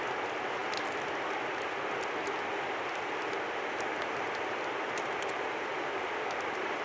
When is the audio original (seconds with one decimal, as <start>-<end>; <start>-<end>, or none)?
0.0-6.8